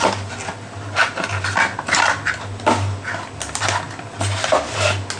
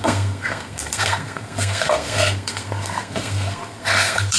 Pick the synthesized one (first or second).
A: second